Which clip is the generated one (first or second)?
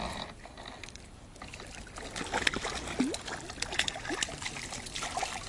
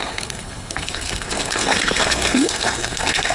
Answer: second